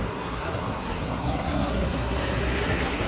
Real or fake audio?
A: fake